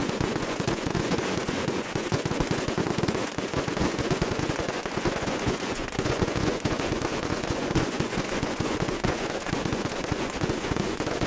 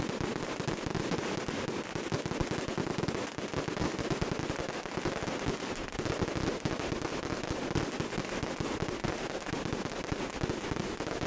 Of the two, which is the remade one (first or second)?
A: first